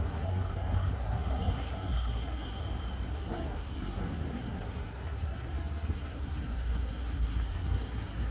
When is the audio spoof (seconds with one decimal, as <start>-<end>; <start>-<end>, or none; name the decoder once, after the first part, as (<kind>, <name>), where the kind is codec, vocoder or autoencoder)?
0.0-2.6 (codec, SNAC); 3.1-8.3